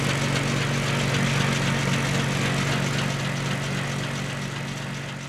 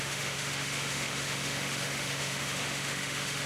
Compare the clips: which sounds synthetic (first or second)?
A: second